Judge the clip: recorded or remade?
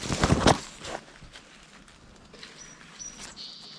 recorded